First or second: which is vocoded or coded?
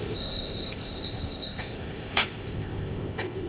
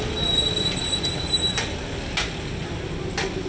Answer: first